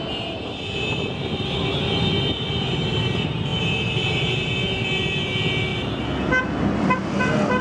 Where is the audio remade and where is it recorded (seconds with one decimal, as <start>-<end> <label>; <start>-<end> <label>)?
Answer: 0.0-7.6 recorded